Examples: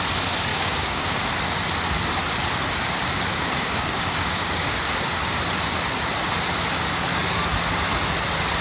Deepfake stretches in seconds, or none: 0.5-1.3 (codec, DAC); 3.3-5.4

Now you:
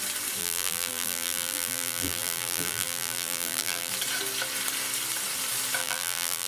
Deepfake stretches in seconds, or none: 0.4-3.9 (vocoder, BigVGAN v2); 5.8-6.5

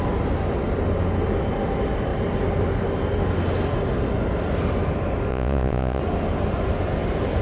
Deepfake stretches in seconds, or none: 5.3-6.0 (vocoder, Vocos)

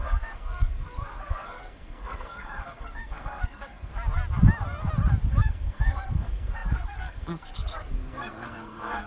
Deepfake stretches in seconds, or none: 0.0-3.9 (codec, SNAC); 5.3-9.1

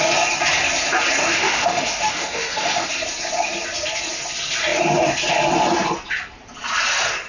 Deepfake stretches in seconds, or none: 1.2-2.9 (autoencoder, DAC-VAE)

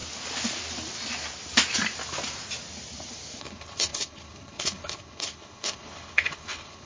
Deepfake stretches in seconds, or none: 3.4-6.9 (codec, HILCodec)

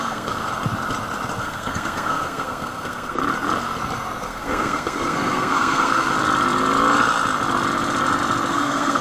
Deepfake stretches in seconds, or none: 0.0-0.4 (codec, SNAC); 1.4-3.2; 4.2-6.1; 8.5-9.0

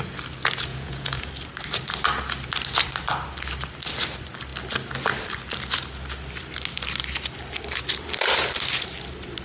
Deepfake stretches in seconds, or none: 0.7-1.3 (vocoder, Vocos)